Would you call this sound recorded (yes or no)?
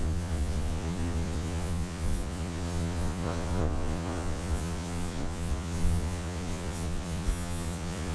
no